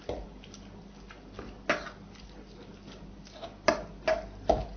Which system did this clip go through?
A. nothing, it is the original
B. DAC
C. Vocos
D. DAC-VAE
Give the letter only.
A